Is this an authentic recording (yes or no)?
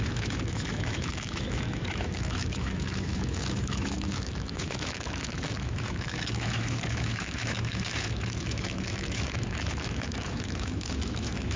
no